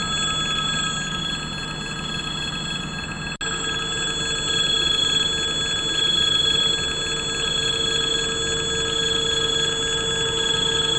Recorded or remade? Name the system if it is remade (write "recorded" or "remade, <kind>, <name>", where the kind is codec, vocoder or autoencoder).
recorded